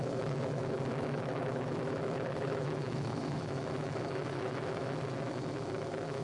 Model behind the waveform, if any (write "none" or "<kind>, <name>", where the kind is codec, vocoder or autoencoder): autoencoder, DAC-VAE